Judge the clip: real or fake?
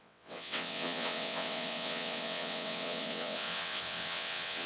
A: fake